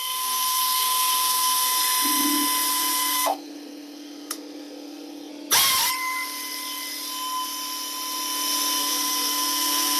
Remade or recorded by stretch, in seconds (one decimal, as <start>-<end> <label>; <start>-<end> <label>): 0.0-1.8 remade; 1.8-2.7 recorded; 2.7-5.3 remade; 5.3-8.8 recorded; 8.8-10.0 remade